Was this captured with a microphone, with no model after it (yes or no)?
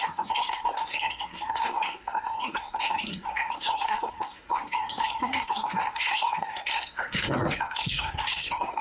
no